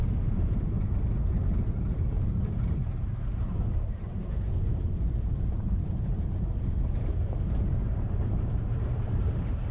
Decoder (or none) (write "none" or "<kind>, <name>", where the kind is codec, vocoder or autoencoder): vocoder, BigVGAN v2